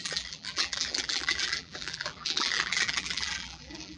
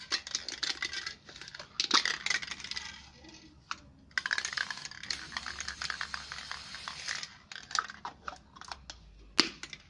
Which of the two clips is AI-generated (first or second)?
first